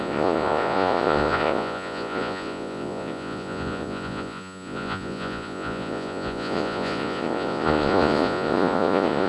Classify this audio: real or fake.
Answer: fake